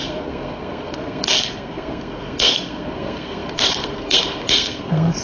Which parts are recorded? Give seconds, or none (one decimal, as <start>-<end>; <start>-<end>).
none